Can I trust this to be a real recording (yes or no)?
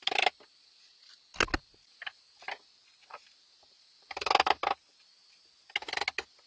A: yes